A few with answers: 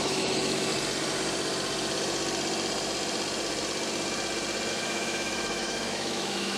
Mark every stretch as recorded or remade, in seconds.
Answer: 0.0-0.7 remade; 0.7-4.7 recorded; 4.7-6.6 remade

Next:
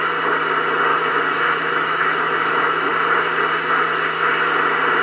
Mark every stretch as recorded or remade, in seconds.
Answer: 0.0-0.9 recorded; 0.9-2.9 remade; 2.9-5.0 recorded

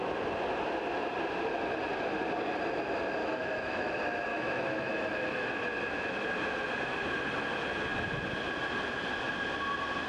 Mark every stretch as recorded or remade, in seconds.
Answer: 0.0-3.2 recorded; 3.2-3.9 remade; 3.9-4.3 recorded; 4.3-5.5 remade; 5.5-10.1 recorded

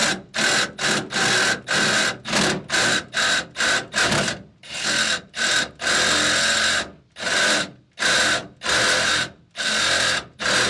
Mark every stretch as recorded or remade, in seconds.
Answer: 0.0-10.7 recorded